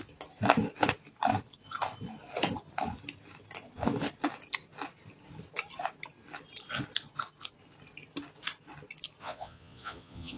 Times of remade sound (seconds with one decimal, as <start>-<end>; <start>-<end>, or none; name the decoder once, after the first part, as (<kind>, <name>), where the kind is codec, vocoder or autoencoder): 9.2-10.4 (vocoder, Vocos)

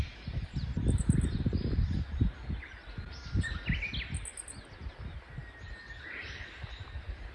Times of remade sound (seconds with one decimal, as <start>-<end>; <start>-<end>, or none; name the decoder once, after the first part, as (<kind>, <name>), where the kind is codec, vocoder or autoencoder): none

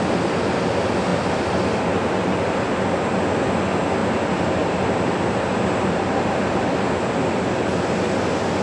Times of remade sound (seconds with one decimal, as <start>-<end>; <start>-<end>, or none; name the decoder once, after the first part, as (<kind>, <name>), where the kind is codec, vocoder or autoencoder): 4.0-6.6 (vocoder, BigVGAN v2)

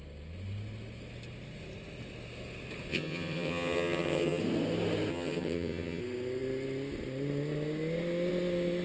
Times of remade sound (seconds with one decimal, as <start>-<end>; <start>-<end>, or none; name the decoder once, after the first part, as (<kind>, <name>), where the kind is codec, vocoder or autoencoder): 2.9-4.4 (vocoder, HiFi-GAN); 5.1-6.0

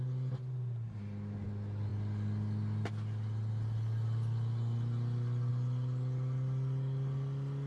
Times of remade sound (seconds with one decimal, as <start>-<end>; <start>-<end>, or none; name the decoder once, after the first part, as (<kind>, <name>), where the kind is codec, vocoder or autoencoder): none

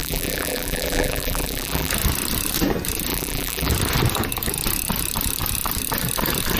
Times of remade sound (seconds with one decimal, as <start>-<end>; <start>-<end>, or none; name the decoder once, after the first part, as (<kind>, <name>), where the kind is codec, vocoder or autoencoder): 0.0-1.9 (vocoder, BigVGAN v2); 3.1-3.7

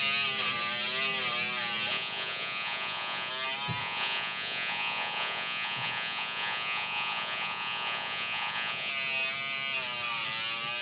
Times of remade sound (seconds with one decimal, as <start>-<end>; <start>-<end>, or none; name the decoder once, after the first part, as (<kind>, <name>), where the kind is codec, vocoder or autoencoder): 1.9-3.3 (vocoder, Vocos); 3.8-8.9

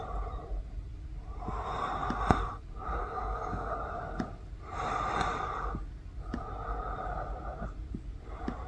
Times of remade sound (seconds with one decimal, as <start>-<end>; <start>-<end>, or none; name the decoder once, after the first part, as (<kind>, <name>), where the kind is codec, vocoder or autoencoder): 3.0-3.7 (codec, DAC)